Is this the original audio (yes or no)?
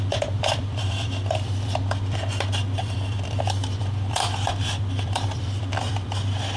no